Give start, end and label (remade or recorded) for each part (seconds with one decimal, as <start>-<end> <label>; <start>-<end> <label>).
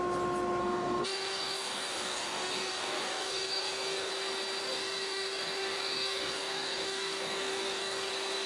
0.0-0.6 recorded; 0.6-4.1 remade; 4.1-4.6 recorded; 4.6-8.1 remade; 8.1-8.5 recorded